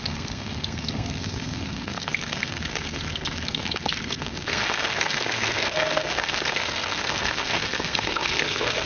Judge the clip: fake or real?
fake